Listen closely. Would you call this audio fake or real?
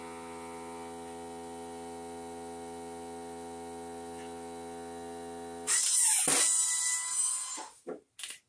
real